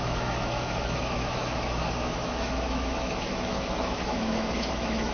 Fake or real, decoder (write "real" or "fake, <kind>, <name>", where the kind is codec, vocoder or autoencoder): fake, autoencoder, DAC-VAE